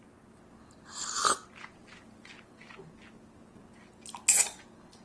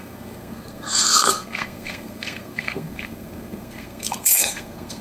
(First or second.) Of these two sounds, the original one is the first